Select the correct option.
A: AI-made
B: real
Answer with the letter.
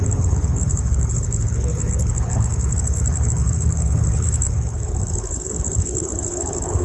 A